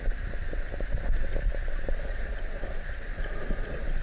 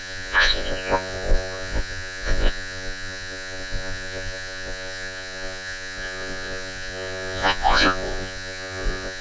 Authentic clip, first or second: first